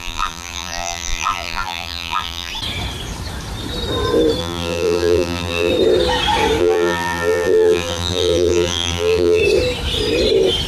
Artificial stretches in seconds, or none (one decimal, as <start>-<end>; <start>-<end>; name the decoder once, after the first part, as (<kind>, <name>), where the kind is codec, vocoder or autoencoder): 0.0-2.5 (vocoder, BigVGAN v2); 4.4-5.7; 6.6-9.4